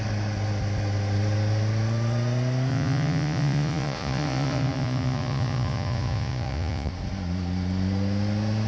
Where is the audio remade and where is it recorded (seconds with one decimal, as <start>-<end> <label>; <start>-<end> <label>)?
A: 0.0-2.7 recorded; 2.7-6.9 remade; 6.9-8.7 recorded